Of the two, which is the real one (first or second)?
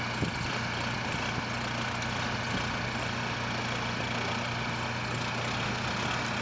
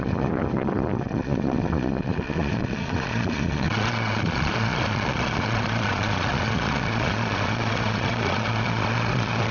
first